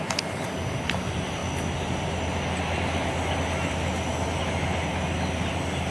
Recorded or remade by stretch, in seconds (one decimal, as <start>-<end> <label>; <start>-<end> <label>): 0.0-5.9 recorded